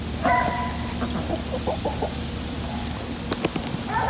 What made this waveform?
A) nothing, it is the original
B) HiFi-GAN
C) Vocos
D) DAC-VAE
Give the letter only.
A